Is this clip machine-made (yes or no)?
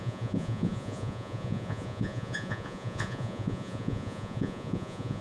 yes